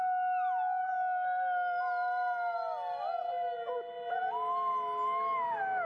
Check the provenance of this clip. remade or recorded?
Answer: recorded